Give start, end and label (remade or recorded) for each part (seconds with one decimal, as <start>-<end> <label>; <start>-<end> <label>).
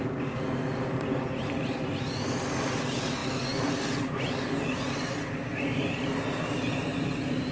0.0-7.5 recorded